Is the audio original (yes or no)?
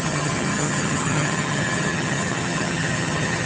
no